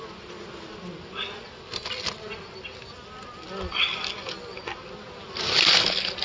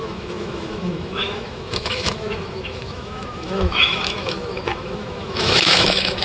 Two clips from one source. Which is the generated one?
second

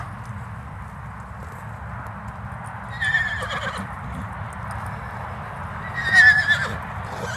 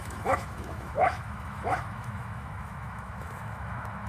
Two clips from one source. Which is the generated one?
second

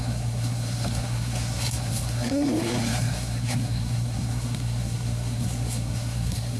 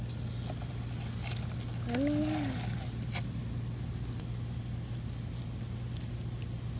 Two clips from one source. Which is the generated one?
first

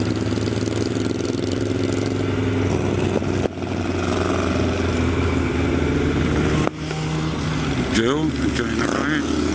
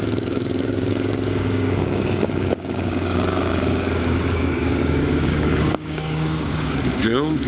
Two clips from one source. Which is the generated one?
second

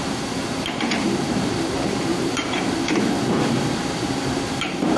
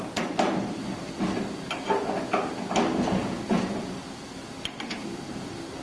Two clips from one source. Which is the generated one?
first